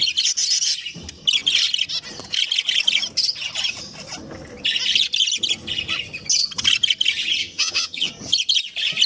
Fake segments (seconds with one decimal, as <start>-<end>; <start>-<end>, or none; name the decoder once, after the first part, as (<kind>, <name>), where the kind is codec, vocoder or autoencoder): 7.4-8.1 (vocoder, HiFi-GAN)